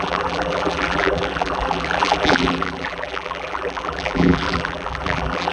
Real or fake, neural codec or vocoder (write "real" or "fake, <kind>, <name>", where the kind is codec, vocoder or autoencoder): fake, vocoder, BigVGAN v2